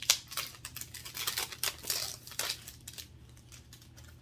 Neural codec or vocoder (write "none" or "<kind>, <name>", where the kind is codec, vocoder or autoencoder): none